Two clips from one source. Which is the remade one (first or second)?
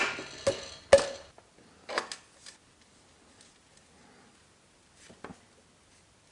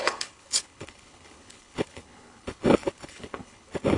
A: second